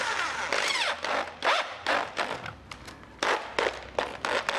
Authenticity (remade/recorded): recorded